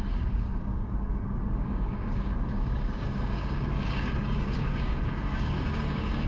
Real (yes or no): no